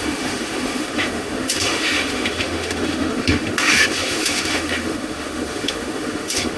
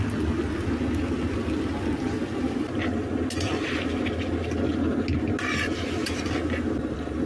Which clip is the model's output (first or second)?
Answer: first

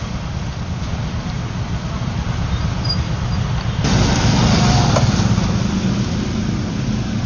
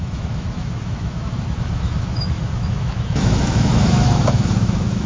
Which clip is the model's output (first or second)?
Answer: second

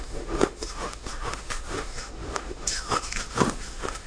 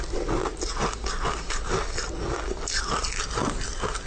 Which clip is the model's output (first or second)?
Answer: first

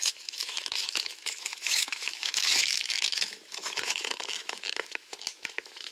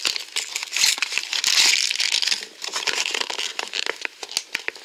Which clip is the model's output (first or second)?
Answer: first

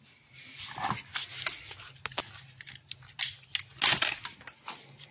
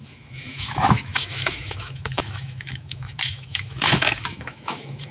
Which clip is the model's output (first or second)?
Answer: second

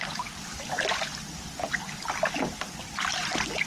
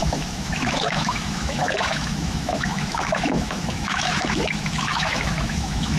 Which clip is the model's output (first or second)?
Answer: second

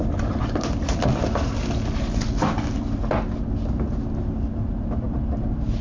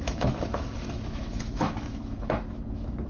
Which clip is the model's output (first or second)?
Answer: second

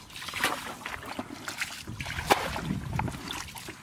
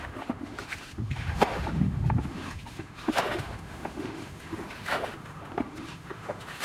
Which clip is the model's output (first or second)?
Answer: second